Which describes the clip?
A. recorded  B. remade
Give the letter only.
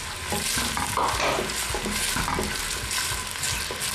A